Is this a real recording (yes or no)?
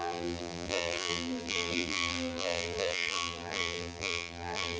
no